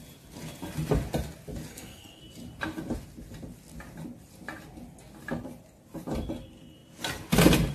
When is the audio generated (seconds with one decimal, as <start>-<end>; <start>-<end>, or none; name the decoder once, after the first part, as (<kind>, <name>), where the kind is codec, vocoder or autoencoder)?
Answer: 1.7-2.2 (codec, SNAC)